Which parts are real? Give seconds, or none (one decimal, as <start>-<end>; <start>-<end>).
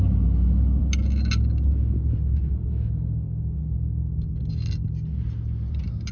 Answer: 0.0-6.1